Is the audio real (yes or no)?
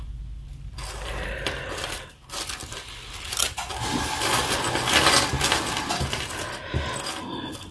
yes